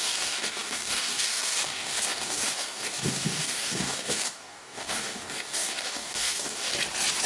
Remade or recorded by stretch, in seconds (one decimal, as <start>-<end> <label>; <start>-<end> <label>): 0.0-6.7 remade; 6.7-7.3 recorded